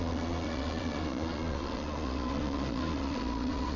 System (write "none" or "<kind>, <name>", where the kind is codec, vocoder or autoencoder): vocoder, Vocos